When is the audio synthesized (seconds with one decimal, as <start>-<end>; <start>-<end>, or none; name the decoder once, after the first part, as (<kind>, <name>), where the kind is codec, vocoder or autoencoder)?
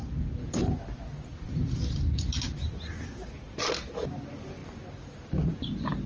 none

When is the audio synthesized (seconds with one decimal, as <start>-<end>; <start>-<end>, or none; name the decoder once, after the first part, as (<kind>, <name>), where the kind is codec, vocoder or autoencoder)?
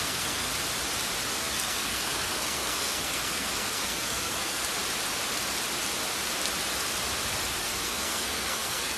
0.0-0.5 (codec, SNAC); 1.4-4.6; 7.6-9.0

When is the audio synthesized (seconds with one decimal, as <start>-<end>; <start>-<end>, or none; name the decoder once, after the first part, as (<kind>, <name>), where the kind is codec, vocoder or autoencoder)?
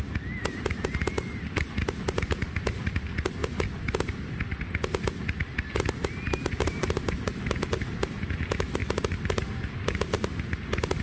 none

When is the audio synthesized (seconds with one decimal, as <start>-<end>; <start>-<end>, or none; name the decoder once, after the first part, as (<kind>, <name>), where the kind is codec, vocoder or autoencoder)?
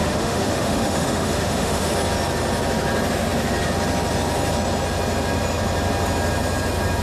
0.0-1.9 (autoencoder, DAC-VAE)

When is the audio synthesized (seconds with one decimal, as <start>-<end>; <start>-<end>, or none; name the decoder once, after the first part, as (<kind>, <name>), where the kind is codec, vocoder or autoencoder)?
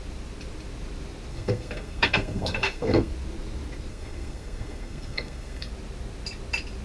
1.3-3.1 (codec, SNAC); 3.9-5.7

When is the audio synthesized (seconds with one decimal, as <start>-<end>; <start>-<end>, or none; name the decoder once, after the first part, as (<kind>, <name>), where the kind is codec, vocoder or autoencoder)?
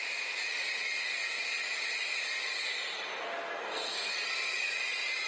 3.5-4.1 (codec, SNAC)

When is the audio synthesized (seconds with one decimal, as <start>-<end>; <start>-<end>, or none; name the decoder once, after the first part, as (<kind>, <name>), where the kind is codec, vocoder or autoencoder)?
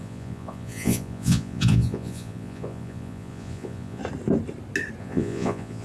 0.0-4.0 (vocoder, Vocos); 5.0-5.8